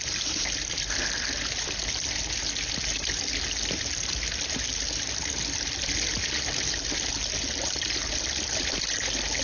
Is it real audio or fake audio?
real